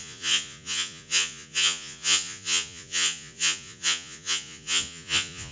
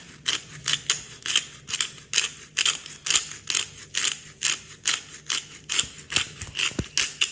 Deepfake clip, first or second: first